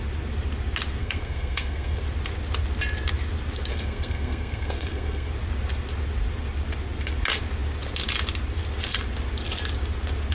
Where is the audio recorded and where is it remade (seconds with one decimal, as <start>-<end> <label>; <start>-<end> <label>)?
0.0-1.0 recorded; 1.0-2.0 remade; 2.0-3.7 recorded; 3.7-5.3 remade; 5.3-10.3 recorded